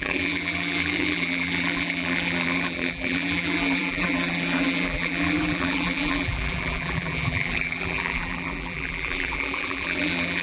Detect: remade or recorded remade